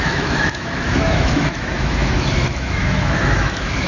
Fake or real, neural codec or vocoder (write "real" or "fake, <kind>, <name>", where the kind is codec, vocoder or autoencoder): fake, autoencoder, DAC-VAE